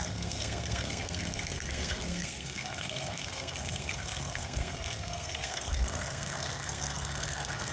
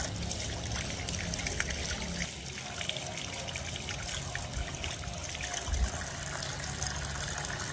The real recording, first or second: second